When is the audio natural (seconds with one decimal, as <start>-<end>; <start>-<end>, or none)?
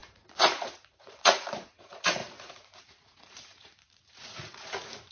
none